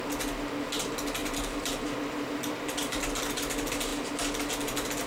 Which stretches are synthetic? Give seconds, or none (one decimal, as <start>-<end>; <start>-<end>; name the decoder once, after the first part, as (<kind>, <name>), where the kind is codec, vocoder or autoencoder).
1.2-3.0 (vocoder, BigVGAN v2)